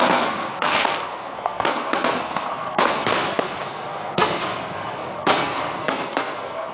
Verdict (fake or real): fake